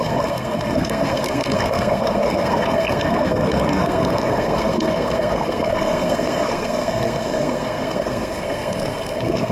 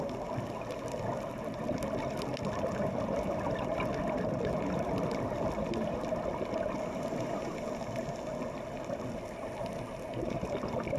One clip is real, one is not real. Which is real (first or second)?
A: second